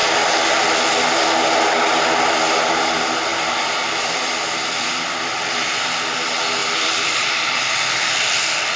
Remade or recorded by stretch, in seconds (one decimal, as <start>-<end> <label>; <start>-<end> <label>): 0.0-3.3 recorded; 3.3-5.3 remade; 5.3-6.6 recorded; 6.6-8.8 remade